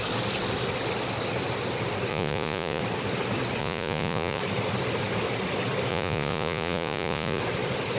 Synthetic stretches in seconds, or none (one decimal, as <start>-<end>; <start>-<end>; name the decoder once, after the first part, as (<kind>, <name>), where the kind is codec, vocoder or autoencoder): 2.1-2.8 (vocoder, Vocos); 3.6-4.4; 5.9-7.4